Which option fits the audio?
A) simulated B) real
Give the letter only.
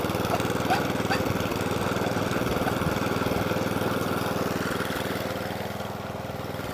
B